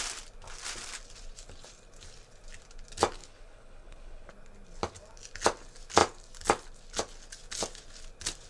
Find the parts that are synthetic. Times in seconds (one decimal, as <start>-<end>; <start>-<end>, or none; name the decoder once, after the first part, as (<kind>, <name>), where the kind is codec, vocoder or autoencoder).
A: 3.2-4.3 (codec, HILCodec)